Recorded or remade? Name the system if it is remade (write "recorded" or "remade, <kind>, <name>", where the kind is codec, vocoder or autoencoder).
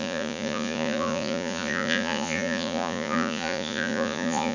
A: remade, vocoder, Vocos